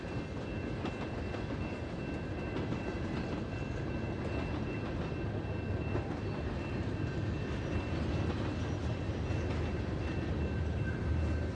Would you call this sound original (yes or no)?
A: yes